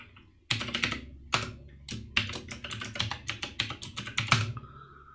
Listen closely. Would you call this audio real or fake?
real